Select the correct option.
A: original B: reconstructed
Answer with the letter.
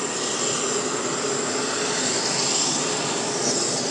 A